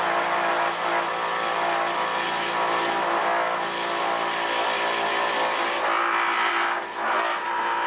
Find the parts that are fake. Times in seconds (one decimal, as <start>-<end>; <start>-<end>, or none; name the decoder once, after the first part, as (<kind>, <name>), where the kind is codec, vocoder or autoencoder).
none